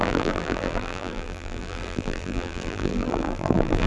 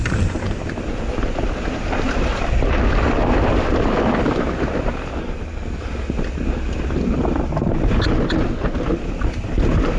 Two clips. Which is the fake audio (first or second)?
first